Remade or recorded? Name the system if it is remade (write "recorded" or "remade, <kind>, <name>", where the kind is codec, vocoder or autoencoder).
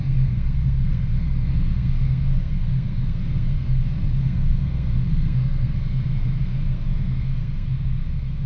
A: remade, codec, SNAC